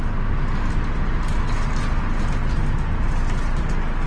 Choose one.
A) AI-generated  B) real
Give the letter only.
B